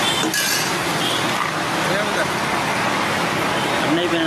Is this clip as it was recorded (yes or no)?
yes